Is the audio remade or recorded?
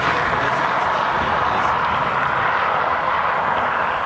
remade